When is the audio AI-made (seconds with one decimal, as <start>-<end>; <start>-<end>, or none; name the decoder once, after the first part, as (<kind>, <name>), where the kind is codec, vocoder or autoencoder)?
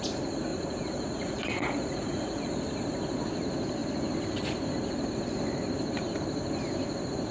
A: 0.5-2.4 (vocoder, Vocos)